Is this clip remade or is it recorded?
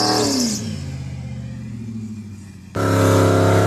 recorded